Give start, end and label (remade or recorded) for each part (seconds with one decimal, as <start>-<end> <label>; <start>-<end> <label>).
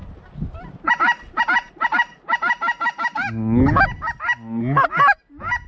0.0-5.7 recorded